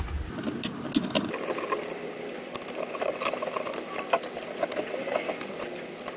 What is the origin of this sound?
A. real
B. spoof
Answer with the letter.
A